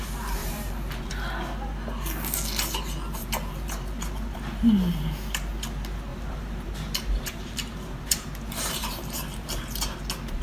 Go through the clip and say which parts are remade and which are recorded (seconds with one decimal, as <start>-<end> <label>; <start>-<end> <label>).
0.0-0.4 recorded; 0.4-1.1 remade; 1.1-3.2 recorded; 3.2-5.5 remade; 5.5-6.1 recorded; 6.1-10.0 remade; 10.0-10.4 recorded